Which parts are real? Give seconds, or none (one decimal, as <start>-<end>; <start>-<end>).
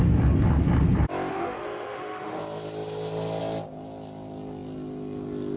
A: 0.0-1.3; 2.4-5.6